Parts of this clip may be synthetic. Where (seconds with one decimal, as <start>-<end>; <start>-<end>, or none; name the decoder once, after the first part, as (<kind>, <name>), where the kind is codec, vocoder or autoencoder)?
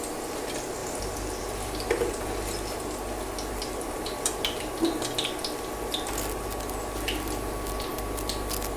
none